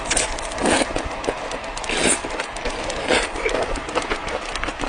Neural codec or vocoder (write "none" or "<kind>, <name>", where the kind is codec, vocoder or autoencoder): none